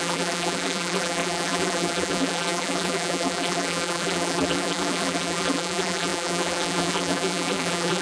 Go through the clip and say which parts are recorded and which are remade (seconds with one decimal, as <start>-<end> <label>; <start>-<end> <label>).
0.0-8.0 remade